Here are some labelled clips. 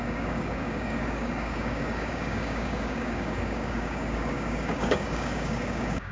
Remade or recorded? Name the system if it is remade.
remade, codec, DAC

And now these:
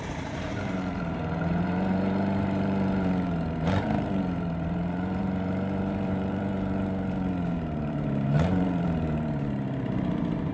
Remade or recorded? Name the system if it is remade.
remade, vocoder, BigVGAN v2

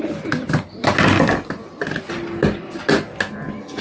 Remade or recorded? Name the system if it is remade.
recorded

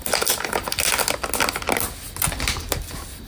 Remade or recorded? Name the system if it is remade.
recorded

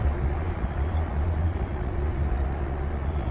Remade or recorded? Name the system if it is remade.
remade, vocoder, Vocos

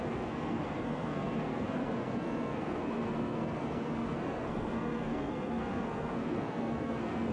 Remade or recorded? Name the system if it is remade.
remade, codec, SNAC